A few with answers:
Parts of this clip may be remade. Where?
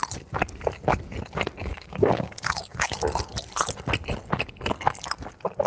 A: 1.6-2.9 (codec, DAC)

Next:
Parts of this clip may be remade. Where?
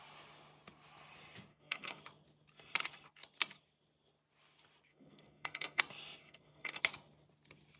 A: 1.5-2.0 (codec, SNAC); 4.9-5.8; 6.2-6.8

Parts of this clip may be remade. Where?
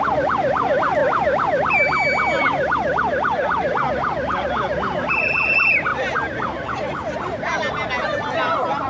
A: 5.9-7.9 (vocoder, BigVGAN v2)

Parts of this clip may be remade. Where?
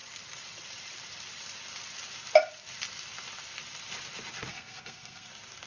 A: 4.5-5.3 (codec, SNAC)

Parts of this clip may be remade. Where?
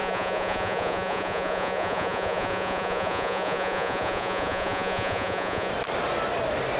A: 0.0-5.7 (vocoder, Vocos)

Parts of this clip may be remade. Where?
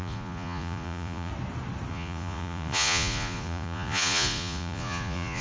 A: 0.0-1.3 (vocoder, Vocos); 1.9-5.4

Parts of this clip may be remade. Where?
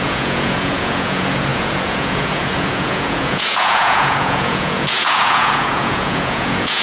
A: 0.0-6.8 (vocoder, Vocos)